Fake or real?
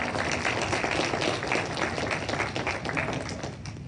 real